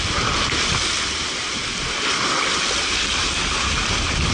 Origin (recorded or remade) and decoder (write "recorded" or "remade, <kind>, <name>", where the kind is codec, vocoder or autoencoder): recorded